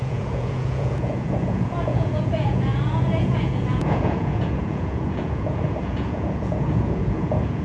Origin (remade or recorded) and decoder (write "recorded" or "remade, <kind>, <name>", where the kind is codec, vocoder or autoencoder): remade, vocoder, Vocos